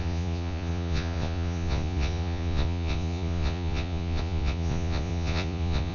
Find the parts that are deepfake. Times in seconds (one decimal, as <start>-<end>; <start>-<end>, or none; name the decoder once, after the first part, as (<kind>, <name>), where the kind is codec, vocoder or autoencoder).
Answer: 0.0-5.9 (vocoder, Vocos)